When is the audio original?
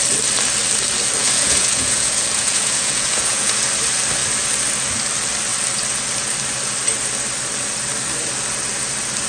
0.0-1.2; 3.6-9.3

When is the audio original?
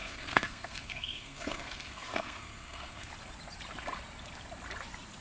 3.1-5.2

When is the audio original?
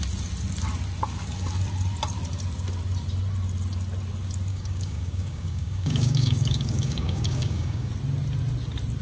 0.0-4.5; 7.9-9.0